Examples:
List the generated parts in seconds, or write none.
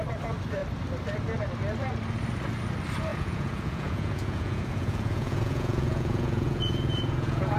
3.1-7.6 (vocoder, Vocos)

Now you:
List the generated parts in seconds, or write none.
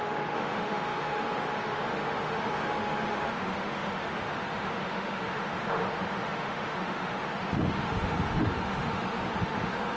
0.0-10.0 (autoencoder, DAC-VAE)